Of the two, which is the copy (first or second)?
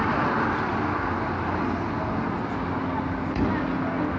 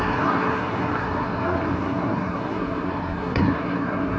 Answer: second